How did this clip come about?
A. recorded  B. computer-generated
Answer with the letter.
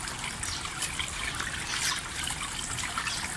A